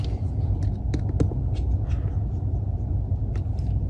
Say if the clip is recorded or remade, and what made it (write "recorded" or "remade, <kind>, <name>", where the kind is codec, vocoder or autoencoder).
recorded